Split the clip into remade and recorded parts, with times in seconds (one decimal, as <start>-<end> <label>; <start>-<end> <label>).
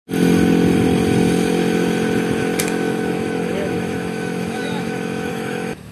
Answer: 0.0-2.6 recorded; 2.6-5.9 remade